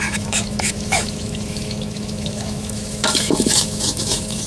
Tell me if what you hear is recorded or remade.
remade